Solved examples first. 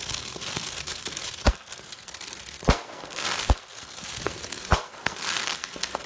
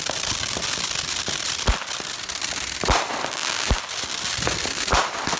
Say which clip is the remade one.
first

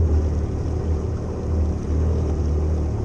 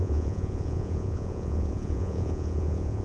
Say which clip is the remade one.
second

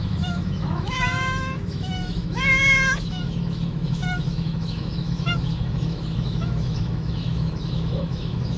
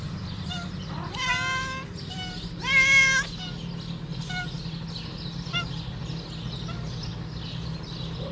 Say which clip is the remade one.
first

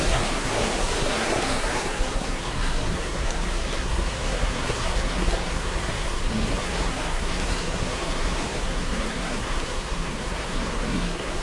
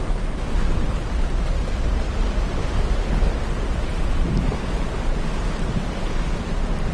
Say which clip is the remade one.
first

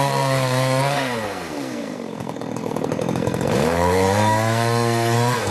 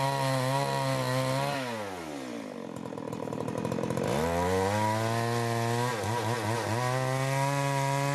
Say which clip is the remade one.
first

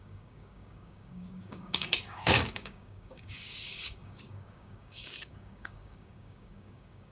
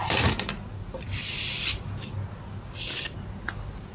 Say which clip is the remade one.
first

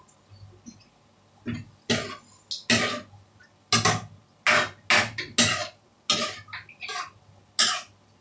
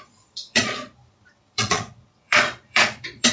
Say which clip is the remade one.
second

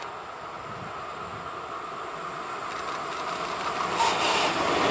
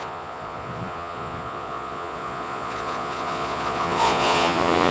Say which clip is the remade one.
second